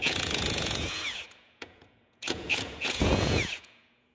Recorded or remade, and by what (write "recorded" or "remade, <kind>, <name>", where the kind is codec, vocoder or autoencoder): remade, vocoder, Vocos